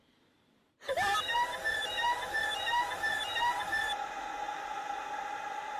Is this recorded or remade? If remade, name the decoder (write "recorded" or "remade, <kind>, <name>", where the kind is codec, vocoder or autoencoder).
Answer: recorded